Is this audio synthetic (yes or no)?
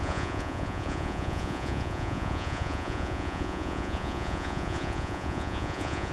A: yes